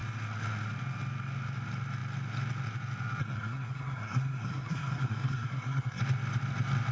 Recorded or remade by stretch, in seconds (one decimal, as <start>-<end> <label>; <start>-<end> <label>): 0.0-3.2 recorded; 3.2-6.0 remade; 6.0-6.9 recorded